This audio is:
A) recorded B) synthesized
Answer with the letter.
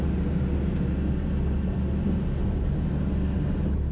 A